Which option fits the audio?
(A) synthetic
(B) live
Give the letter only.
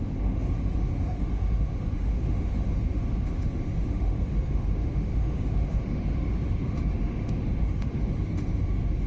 A